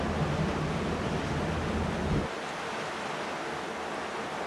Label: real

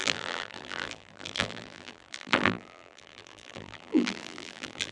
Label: fake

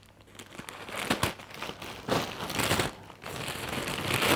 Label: real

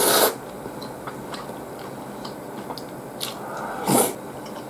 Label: real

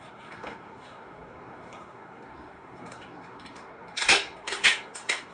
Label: fake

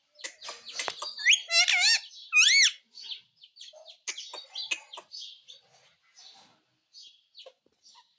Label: real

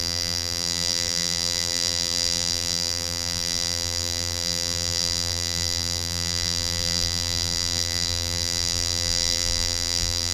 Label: fake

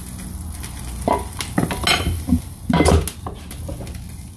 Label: real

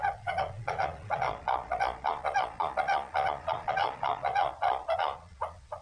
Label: fake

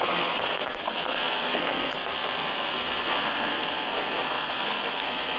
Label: fake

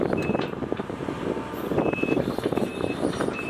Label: fake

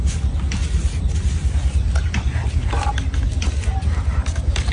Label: real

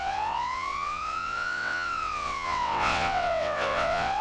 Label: fake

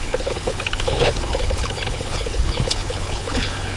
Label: fake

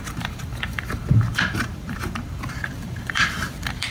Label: fake